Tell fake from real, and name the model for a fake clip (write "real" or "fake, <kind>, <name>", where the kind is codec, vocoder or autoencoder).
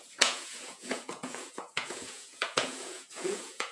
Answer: fake, vocoder, Vocos